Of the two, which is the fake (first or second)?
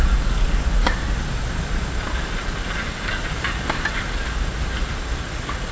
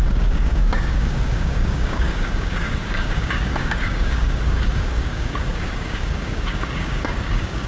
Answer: second